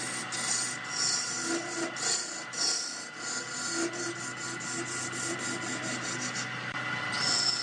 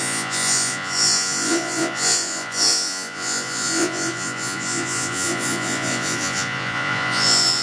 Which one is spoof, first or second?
second